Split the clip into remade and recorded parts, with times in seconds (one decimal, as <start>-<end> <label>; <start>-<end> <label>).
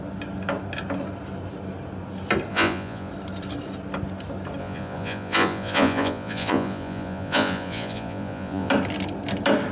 0.0-2.5 recorded; 2.5-3.1 remade; 3.1-4.6 recorded; 4.6-8.7 remade; 8.7-9.7 recorded